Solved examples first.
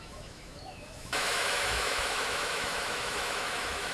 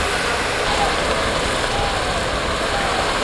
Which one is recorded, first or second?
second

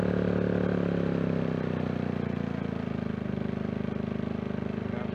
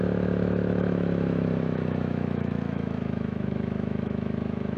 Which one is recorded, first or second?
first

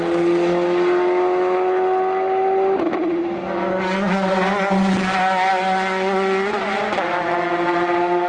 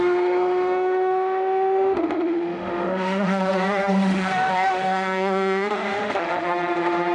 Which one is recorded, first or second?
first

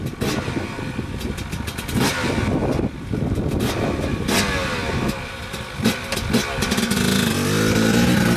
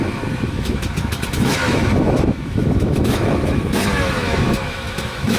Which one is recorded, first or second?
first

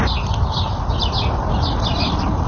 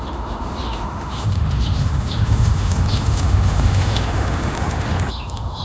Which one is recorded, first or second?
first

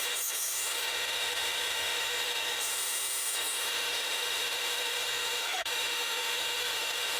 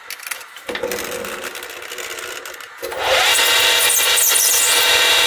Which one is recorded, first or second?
second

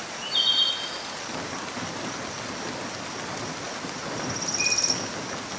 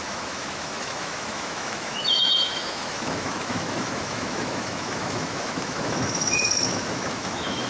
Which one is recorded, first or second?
first